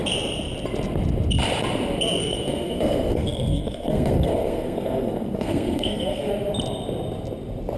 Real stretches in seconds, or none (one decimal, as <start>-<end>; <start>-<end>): 0.0-2.2; 6.3-7.8